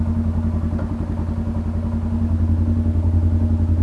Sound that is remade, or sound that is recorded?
recorded